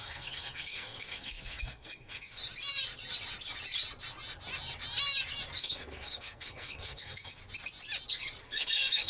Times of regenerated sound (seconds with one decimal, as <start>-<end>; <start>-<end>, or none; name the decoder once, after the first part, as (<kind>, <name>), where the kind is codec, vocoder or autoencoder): 0.0-2.4 (codec, SNAC); 5.6-7.4; 8.4-9.1

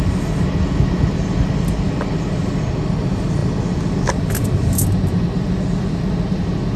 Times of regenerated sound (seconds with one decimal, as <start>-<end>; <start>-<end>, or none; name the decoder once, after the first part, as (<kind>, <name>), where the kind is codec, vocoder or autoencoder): none

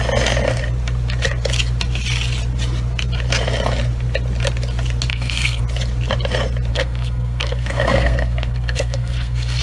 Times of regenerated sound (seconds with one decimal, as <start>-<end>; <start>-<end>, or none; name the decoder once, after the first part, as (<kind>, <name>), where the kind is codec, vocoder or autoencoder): 5.1-5.6 (codec, SNAC); 6.7-9.6

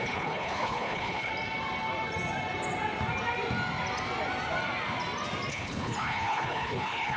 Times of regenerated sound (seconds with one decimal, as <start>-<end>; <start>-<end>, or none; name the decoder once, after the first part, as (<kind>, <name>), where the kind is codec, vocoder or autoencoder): 0.0-1.3 (codec, HILCodec); 5.5-7.2

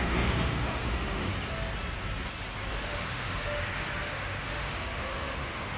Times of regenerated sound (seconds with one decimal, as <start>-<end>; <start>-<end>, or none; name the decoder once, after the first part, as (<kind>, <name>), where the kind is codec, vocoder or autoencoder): 0.0-1.3 (autoencoder, DAC-VAE); 2.7-3.6; 4.1-5.8